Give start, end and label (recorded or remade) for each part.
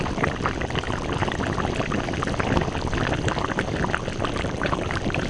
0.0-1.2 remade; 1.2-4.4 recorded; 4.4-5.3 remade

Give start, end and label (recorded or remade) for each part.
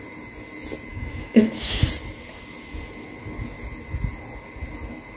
0.0-0.9 recorded; 0.9-1.9 remade; 1.9-5.2 recorded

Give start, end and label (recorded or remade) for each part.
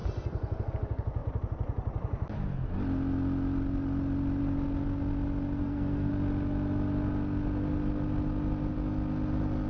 0.0-5.6 recorded; 5.6-6.1 remade; 6.1-9.7 recorded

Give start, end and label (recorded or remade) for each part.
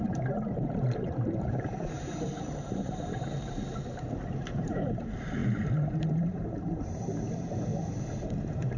0.0-7.7 remade; 7.7-8.4 recorded; 8.4-8.8 remade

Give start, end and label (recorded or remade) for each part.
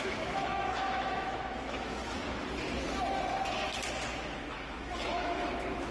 0.0-2.0 remade; 2.0-4.3 recorded; 4.3-5.9 remade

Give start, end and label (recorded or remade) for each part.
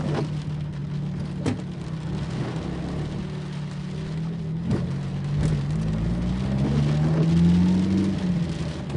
0.0-9.0 recorded